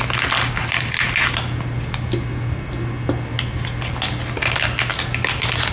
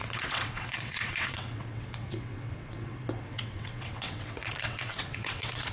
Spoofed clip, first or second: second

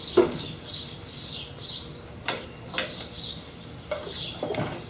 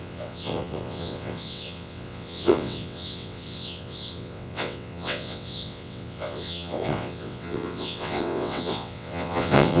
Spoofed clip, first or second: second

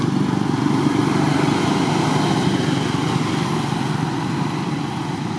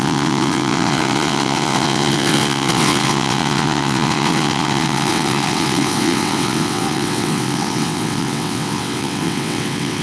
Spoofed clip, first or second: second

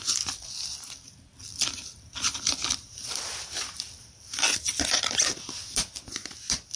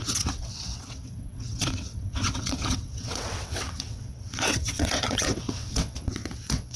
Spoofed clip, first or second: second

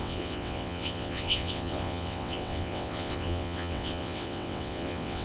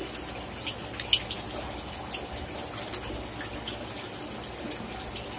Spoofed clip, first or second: first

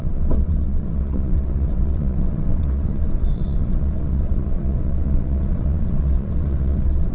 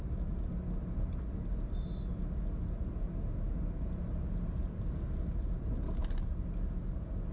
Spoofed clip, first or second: first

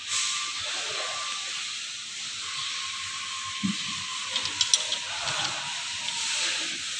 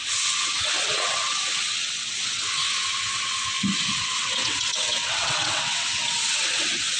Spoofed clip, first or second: second